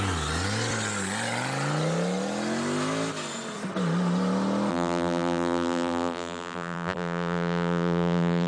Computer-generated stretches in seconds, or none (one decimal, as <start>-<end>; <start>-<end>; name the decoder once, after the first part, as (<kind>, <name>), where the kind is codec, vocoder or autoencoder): 4.7-8.5 (vocoder, BigVGAN v2)